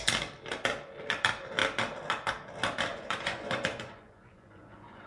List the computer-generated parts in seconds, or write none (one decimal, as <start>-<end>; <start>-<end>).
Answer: 2.9-5.1